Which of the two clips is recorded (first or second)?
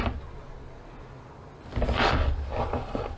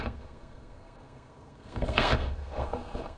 first